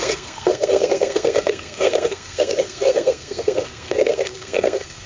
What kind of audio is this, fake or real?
fake